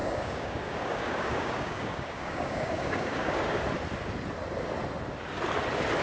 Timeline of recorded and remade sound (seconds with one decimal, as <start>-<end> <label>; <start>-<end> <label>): 0.0-3.6 remade; 3.6-6.0 recorded